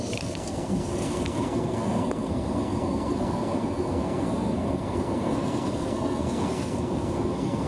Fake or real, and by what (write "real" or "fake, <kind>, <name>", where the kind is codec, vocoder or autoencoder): fake, codec, SNAC